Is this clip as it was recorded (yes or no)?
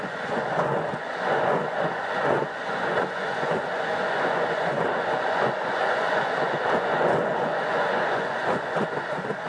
no